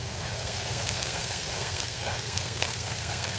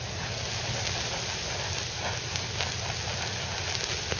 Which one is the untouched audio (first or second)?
second